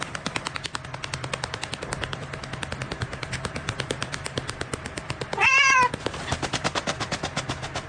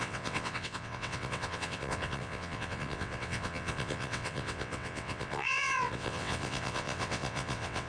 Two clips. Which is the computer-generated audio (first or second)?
second